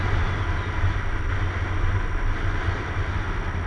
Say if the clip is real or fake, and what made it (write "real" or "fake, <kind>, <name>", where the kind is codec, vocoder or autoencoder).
real